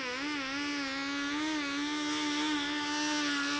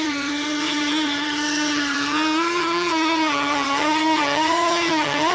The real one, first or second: first